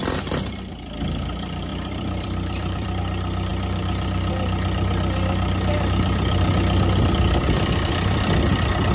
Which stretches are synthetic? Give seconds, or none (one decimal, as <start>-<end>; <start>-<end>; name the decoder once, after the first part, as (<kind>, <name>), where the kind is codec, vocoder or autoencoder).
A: 1.7-3.0 (vocoder, BigVGAN v2)